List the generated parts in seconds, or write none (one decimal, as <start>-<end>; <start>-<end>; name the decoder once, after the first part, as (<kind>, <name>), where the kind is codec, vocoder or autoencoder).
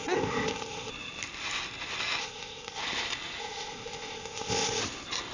0.0-0.9 (codec, ZipCodec); 2.2-2.8; 3.4-4.8